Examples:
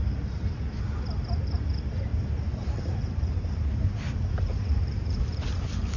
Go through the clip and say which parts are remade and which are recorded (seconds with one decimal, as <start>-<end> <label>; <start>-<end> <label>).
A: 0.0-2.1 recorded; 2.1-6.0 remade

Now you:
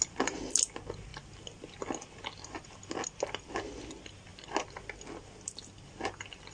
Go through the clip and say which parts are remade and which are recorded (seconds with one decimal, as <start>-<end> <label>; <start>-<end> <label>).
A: 0.0-6.5 recorded

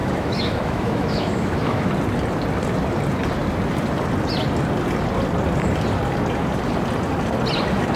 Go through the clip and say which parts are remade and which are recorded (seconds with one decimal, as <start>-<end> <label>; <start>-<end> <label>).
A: 0.0-1.9 remade; 1.9-8.0 recorded

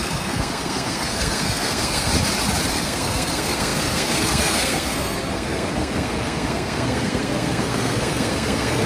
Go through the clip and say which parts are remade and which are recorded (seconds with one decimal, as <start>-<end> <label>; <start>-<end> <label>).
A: 0.0-2.1 remade; 2.1-2.7 recorded; 2.7-8.9 remade

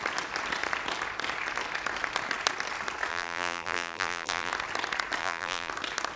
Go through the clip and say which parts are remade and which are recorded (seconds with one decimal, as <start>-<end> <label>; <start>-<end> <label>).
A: 0.0-3.1 recorded; 3.1-4.5 remade; 4.5-5.2 recorded; 5.2-5.7 remade; 5.7-6.2 recorded

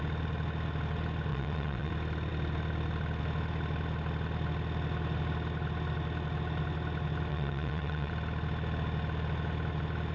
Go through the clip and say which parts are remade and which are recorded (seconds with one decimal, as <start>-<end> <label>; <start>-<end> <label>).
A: 0.0-1.3 recorded; 1.3-1.9 remade; 1.9-7.3 recorded; 7.3-8.1 remade; 8.1-10.1 recorded